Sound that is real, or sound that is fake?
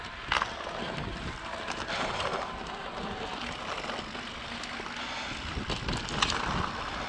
real